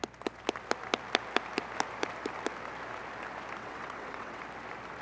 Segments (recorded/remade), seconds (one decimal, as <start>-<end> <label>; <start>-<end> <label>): 0.0-3.6 recorded; 3.6-4.4 remade; 4.4-5.0 recorded